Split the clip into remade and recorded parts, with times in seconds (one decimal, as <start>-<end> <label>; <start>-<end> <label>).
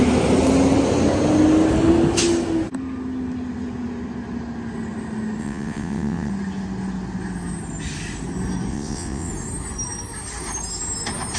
0.0-5.4 recorded; 5.4-6.3 remade; 6.3-8.7 recorded; 8.7-9.3 remade; 9.3-11.4 recorded